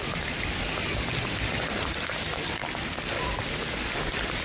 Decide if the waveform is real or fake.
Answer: real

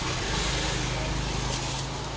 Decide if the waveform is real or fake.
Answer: real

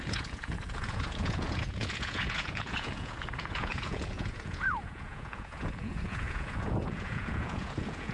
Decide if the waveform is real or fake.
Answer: fake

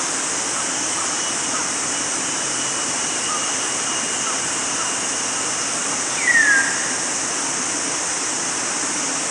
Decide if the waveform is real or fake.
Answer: real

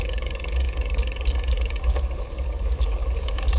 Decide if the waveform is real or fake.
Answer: fake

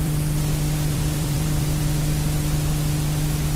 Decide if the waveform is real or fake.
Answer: fake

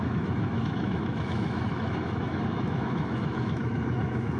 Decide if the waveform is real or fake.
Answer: fake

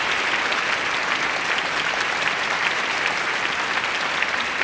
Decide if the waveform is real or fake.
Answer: fake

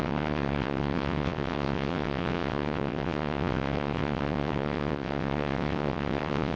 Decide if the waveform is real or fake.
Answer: fake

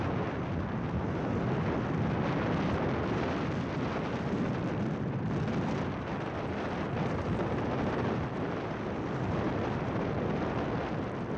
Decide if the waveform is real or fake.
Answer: real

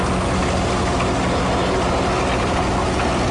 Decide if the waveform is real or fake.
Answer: real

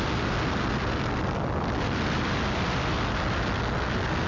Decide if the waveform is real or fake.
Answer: real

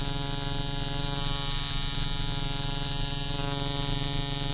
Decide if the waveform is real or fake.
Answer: real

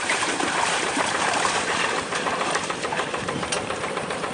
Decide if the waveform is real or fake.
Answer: fake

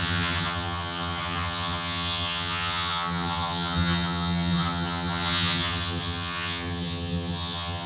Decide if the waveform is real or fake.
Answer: fake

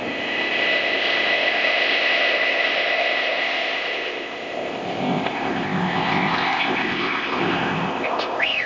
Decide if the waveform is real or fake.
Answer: fake